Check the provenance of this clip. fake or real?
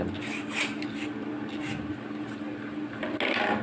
real